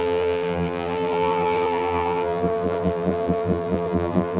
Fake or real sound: fake